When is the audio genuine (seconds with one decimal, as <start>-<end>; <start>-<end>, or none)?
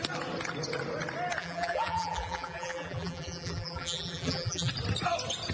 0.0-1.4; 4.7-5.5